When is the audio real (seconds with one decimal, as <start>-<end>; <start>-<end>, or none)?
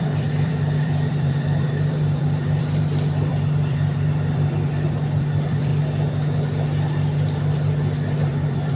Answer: 5.7-8.2